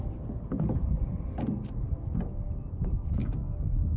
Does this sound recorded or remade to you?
recorded